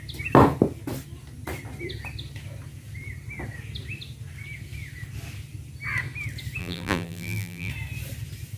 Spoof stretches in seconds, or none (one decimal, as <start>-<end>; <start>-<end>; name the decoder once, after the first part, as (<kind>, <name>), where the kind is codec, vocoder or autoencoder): 6.6-7.7 (vocoder, BigVGAN v2)